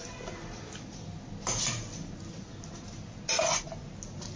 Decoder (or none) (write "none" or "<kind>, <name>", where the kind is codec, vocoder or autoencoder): none